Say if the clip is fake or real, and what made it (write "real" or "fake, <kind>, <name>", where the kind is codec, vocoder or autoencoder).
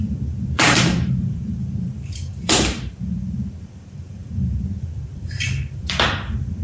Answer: fake, vocoder, BigVGAN v2